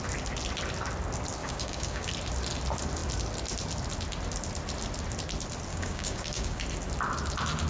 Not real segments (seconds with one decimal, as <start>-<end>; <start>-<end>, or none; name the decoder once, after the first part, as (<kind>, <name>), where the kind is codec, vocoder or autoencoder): 1.4-2.1 (codec, DAC); 5.7-6.6